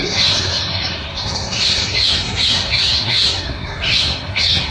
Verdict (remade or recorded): remade